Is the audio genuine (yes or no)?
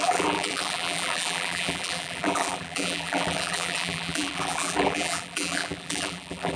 no